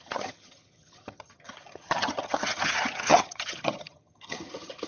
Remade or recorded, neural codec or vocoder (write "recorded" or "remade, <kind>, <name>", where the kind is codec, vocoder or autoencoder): remade, vocoder, HiFi-GAN